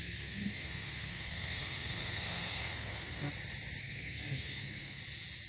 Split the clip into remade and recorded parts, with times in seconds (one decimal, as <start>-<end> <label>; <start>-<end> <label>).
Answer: 0.0-3.3 remade; 3.3-3.8 recorded; 3.8-5.0 remade; 5.0-5.5 recorded